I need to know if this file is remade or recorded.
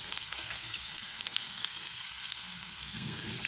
remade